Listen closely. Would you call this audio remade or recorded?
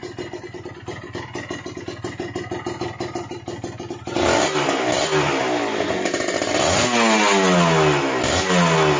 recorded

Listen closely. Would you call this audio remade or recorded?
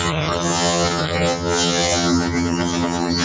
remade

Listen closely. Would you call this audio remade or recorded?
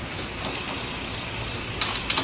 recorded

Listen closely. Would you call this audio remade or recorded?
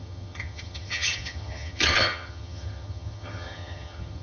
remade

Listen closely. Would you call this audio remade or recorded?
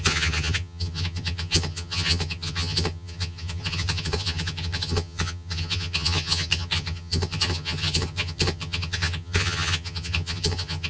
remade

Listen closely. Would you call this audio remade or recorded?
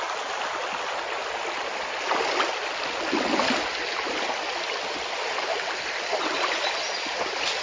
recorded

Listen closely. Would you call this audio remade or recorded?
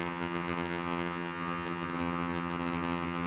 remade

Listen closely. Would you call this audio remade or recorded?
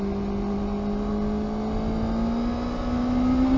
recorded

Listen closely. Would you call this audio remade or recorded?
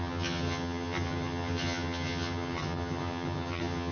remade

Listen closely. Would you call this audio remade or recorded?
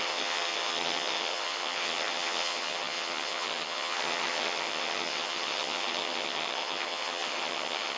remade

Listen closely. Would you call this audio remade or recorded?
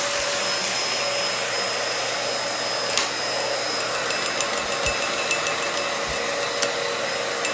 recorded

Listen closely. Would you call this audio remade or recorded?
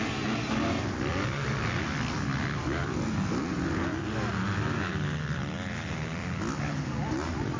recorded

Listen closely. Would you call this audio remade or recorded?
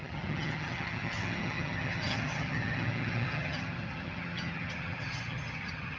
remade